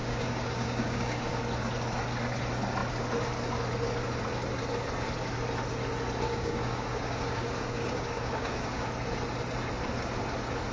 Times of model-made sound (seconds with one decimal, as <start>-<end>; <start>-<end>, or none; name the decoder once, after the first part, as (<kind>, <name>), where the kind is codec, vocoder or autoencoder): 0.0-1.4 (codec, DAC); 6.3-8.9